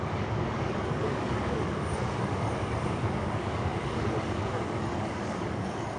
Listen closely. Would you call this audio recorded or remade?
remade